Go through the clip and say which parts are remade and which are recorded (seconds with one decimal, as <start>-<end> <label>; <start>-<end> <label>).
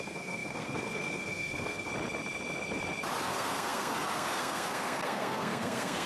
0.0-1.9 remade; 1.9-3.2 recorded; 3.2-6.1 remade